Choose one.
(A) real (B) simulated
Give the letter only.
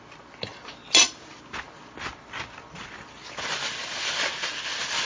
A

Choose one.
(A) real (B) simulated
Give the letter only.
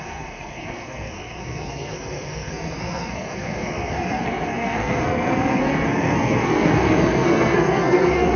B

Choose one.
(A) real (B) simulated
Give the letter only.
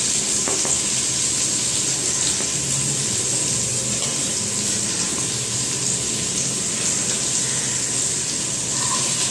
A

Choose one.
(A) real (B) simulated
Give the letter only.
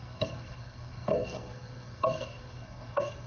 B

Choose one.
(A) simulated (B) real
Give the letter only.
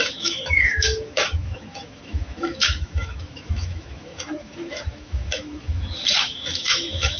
A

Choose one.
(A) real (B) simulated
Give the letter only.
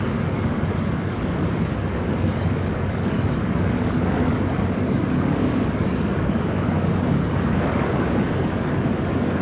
B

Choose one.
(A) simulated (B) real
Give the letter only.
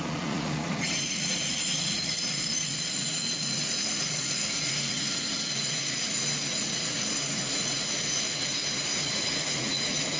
A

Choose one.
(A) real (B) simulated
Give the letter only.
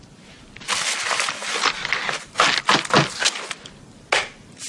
A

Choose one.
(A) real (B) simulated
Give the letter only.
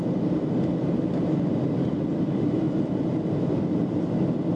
A